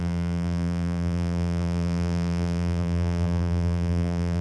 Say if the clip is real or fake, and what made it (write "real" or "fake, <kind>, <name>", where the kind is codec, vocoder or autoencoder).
fake, vocoder, BigVGAN v2